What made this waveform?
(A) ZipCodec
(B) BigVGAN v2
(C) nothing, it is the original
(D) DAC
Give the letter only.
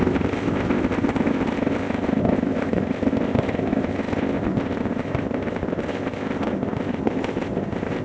A